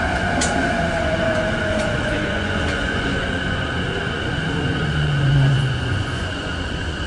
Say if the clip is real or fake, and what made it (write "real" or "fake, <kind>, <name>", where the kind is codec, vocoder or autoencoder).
fake, vocoder, Vocos